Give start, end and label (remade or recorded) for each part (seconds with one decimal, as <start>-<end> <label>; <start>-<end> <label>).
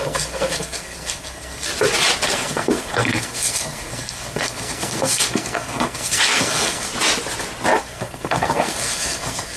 0.0-1.7 remade; 1.7-2.3 recorded; 2.3-6.9 remade; 6.9-7.8 recorded; 7.8-9.6 remade